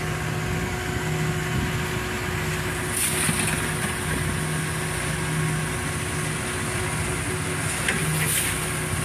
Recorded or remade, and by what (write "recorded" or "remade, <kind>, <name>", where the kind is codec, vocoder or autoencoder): recorded